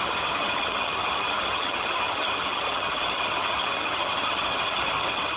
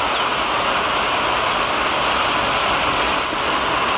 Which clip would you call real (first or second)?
second